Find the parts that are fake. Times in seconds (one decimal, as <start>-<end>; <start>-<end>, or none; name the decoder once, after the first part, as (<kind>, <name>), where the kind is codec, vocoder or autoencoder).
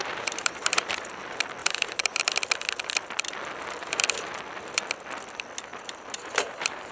0.0-0.9 (vocoder, BigVGAN v2); 1.6-2.2; 5.7-6.9